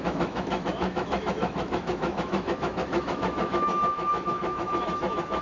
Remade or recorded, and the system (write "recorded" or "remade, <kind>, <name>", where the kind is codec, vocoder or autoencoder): remade, autoencoder, DAC-VAE